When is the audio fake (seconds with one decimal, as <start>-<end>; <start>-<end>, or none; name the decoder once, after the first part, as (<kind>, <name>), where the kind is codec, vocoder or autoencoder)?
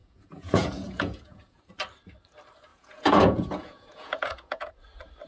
0.0-1.6 (vocoder, Vocos); 2.7-4.7